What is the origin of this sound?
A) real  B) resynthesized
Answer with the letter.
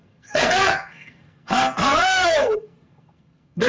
B